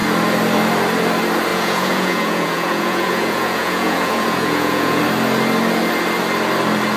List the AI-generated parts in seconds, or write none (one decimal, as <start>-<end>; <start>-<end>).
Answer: 1.5-5.0